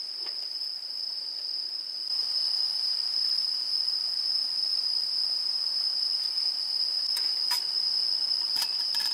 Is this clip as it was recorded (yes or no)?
no